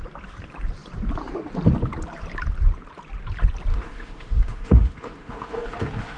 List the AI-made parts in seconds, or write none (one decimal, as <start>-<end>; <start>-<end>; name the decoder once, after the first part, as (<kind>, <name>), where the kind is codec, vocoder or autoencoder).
3.7-6.2 (autoencoder, DAC-VAE)